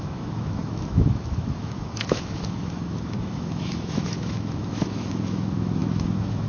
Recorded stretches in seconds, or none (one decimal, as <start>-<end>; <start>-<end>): none